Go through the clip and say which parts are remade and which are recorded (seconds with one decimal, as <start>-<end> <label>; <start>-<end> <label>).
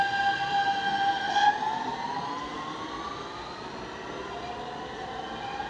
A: 0.0-5.7 recorded